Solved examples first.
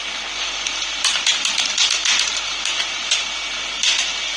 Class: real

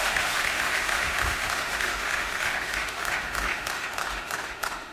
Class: fake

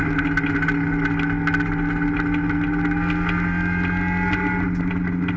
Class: real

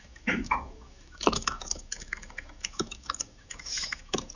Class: fake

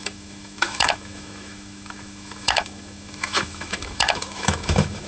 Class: fake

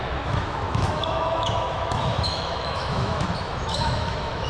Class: fake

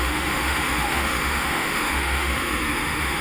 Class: fake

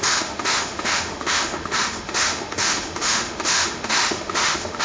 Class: fake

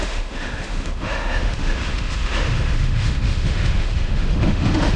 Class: fake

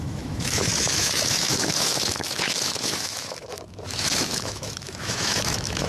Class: fake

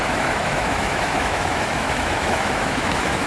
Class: fake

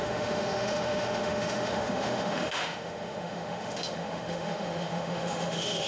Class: fake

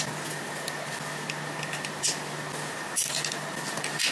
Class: real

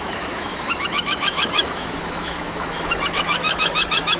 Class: fake